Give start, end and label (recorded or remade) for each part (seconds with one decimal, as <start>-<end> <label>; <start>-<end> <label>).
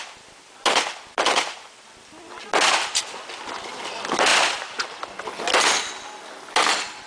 0.0-7.1 recorded